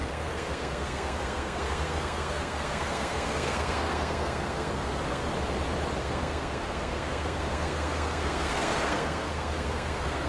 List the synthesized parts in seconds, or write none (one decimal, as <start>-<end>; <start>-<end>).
0.0-5.2; 6.0-10.3